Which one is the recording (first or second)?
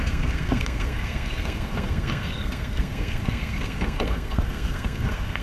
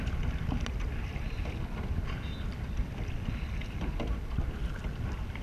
second